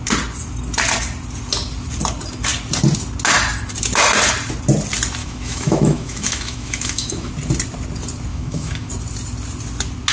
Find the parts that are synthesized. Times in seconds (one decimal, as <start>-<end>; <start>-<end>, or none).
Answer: 5.2-7.3; 8.3-8.9